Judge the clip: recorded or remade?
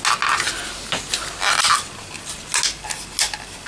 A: recorded